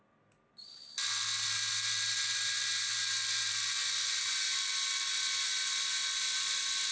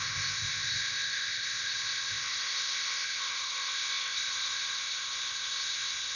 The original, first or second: first